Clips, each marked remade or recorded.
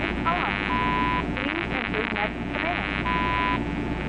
recorded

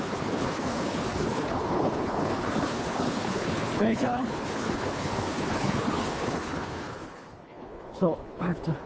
remade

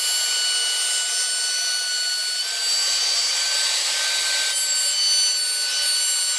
recorded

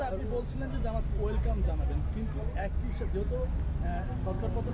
recorded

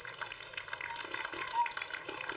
recorded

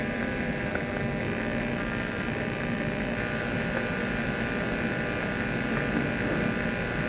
recorded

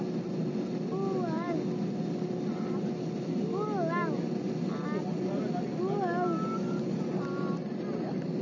recorded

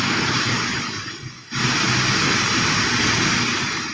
recorded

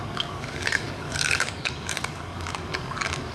remade